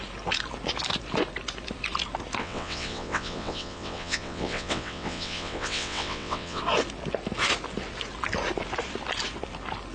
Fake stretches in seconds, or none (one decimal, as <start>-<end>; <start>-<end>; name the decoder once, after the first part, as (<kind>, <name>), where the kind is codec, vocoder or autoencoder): 2.4-6.6 (vocoder, WaveNeXt)